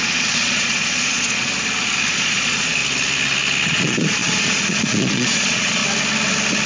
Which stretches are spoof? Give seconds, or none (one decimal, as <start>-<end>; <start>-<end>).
0.0-1.5; 2.1-2.8; 3.7-5.8